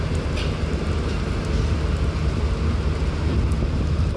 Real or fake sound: real